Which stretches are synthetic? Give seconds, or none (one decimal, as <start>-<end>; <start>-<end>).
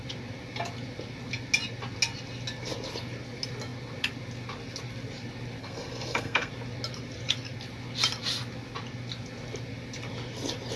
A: 5.6-6.5